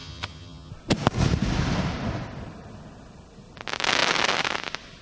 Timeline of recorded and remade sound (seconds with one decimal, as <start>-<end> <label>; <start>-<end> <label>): 0.0-0.7 remade; 0.7-5.0 recorded